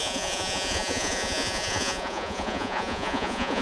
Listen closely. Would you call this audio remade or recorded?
remade